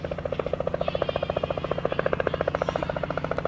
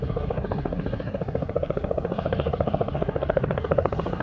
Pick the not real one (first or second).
second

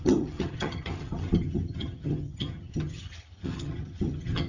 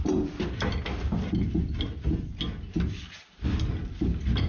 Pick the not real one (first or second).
first